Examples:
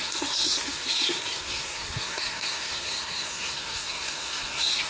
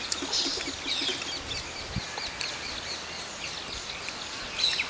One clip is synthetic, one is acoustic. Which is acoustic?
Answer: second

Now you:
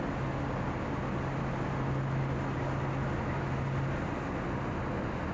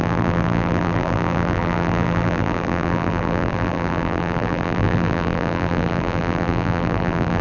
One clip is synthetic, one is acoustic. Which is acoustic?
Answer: first